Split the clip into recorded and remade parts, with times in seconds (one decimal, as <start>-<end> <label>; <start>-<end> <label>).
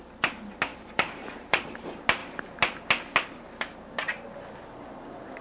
0.0-0.7 recorded; 0.7-1.8 remade; 1.8-5.4 recorded